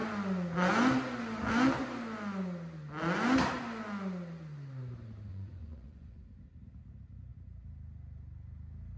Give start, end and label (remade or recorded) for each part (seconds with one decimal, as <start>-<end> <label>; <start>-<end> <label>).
0.0-5.3 recorded; 5.3-6.2 remade; 6.2-9.0 recorded

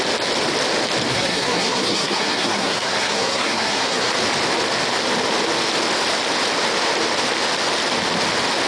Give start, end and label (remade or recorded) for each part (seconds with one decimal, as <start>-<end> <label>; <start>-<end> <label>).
0.0-1.1 recorded; 1.1-4.1 remade; 4.1-8.7 recorded

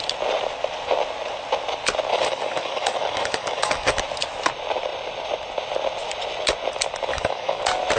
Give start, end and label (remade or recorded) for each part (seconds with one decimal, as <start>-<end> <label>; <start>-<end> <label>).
0.0-2.1 recorded; 2.1-4.0 remade; 4.0-7.1 recorded; 7.1-7.6 remade; 7.6-8.0 recorded

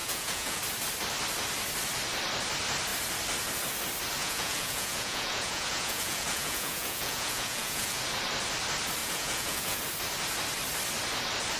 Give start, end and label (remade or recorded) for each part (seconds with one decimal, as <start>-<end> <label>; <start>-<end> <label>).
0.0-0.6 remade; 0.6-4.2 recorded; 4.2-8.0 remade; 8.0-9.0 recorded; 9.0-9.8 remade; 9.8-11.6 recorded

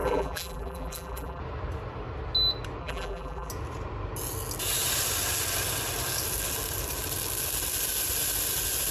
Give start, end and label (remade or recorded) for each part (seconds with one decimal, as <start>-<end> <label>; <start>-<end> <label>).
0.0-1.4 remade; 1.4-2.8 recorded; 2.8-3.5 remade; 3.5-8.9 recorded